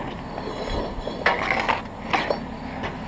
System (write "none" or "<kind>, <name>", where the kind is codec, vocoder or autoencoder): none